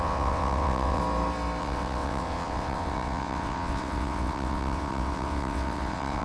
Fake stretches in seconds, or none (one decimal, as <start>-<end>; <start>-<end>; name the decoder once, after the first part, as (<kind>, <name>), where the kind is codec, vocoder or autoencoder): 0.0-1.0 (vocoder, WaveNeXt); 1.6-6.2